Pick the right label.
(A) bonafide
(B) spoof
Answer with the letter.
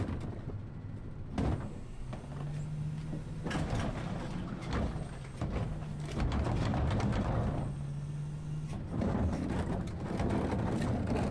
A